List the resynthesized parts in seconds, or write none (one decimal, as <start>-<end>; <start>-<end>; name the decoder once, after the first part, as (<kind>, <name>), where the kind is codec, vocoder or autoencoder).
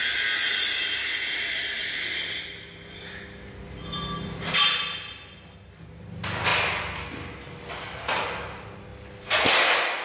none